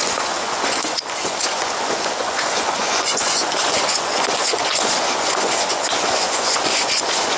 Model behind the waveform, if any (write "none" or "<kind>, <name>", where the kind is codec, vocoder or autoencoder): vocoder, Vocos